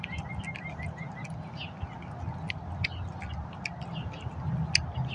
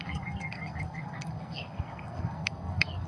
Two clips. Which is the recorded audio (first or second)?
first